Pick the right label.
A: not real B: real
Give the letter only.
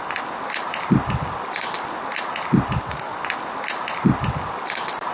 B